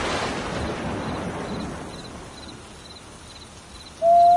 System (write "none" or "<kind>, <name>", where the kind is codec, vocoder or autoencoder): none